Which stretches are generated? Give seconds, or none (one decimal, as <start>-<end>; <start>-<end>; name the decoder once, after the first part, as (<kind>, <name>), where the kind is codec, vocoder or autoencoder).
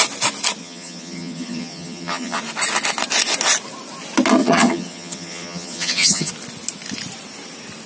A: 0.6-2.4 (vocoder, HiFi-GAN); 4.4-6.3